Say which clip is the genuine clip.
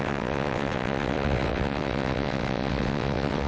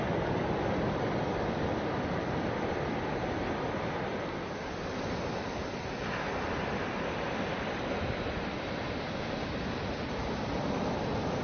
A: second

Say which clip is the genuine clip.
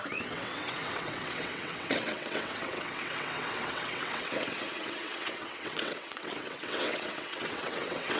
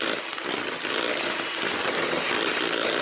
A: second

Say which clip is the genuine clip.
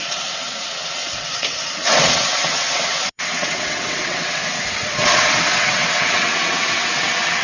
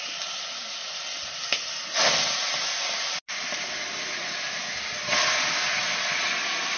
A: second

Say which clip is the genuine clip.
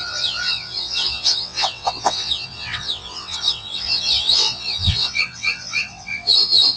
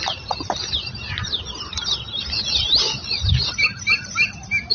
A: second